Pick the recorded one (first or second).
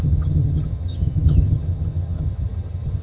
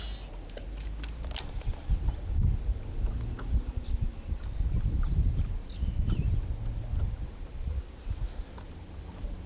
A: second